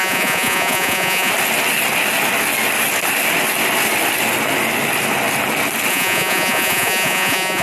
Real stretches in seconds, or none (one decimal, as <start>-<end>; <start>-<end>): 1.3-5.9